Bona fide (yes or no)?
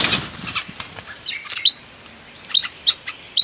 yes